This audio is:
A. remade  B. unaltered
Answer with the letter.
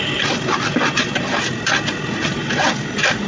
B